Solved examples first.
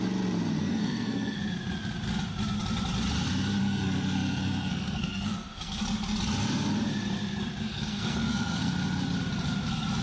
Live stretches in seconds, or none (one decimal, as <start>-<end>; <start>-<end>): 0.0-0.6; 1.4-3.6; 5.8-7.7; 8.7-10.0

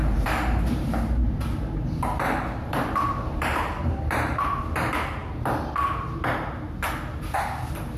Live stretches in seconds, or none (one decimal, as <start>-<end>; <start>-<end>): 4.6-8.0

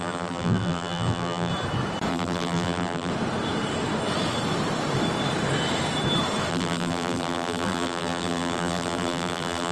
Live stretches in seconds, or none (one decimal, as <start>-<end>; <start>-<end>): 1.5-2.1; 3.1-6.5

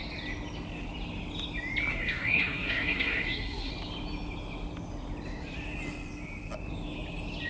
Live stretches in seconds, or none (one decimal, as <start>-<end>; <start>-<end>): 0.0-1.9; 3.7-7.5

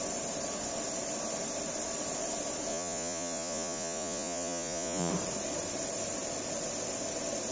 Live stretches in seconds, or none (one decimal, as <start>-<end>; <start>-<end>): 0.0-2.7; 5.1-7.5